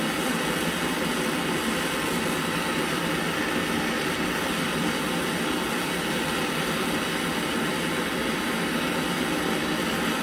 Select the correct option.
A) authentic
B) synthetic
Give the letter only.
A